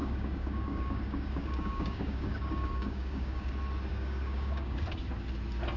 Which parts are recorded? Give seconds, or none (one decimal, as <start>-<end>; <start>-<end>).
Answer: 3.5-3.9; 4.8-5.8